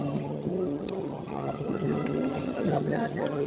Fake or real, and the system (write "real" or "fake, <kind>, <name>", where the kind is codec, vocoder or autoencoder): fake, vocoder, HiFi-GAN